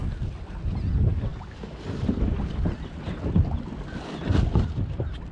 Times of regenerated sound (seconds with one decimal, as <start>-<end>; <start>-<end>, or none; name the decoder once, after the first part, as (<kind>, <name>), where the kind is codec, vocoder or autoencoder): none

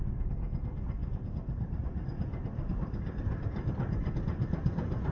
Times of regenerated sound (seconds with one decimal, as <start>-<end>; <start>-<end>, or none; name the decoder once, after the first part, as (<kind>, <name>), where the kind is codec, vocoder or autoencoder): none

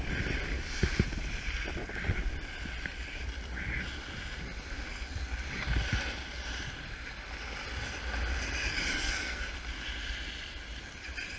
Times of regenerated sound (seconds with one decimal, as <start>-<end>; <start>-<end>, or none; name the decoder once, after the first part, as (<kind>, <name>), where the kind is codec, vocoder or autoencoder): 9.0-9.5 (codec, SNAC)

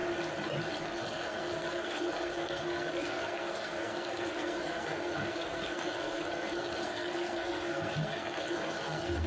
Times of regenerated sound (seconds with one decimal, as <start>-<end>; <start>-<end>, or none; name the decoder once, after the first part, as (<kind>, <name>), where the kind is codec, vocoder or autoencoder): 0.8-9.3 (codec, SNAC)